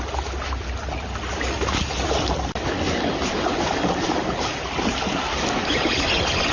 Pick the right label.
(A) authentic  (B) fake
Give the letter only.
A